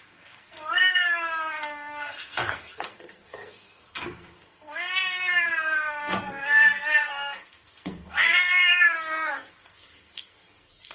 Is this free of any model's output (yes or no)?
no